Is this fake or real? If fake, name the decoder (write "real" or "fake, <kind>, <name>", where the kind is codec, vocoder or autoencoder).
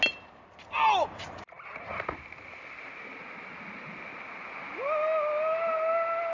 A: real